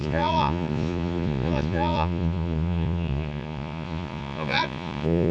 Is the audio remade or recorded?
remade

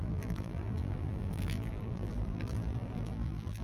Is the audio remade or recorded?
remade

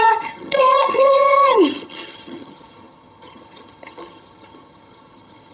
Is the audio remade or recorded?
remade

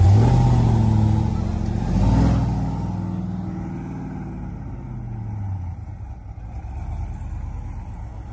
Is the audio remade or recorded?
recorded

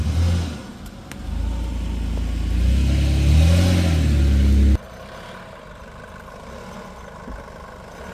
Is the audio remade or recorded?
recorded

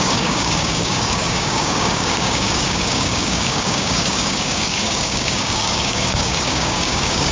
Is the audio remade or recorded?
remade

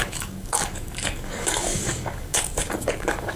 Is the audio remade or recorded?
remade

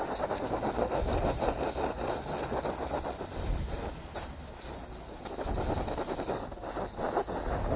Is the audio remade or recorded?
recorded